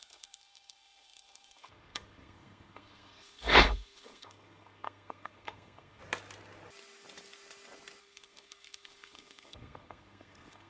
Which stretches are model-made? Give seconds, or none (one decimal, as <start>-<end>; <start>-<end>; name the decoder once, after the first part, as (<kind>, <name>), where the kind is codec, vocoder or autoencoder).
0.0-6.0 (codec, SNAC); 8.0-10.7